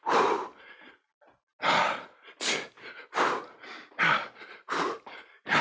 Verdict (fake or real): real